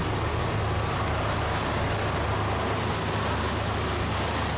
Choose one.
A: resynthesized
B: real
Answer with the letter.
B